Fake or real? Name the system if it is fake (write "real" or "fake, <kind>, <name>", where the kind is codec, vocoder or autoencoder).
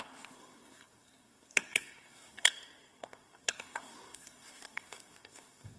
fake, codec, SNAC